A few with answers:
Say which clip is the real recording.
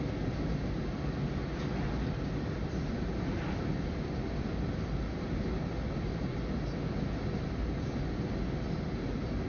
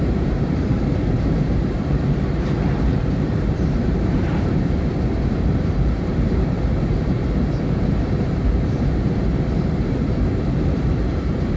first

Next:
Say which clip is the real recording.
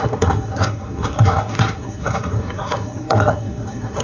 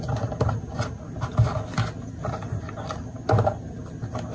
second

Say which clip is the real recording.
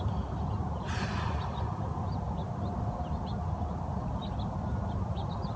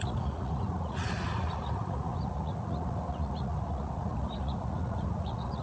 first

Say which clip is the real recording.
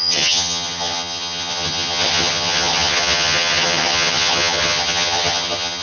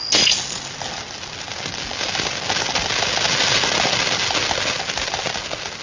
second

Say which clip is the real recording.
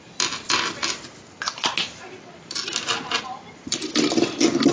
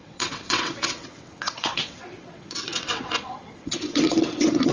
first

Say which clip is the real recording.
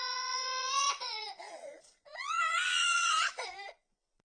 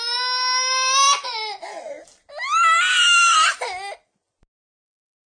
second